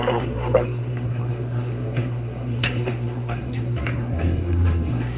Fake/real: fake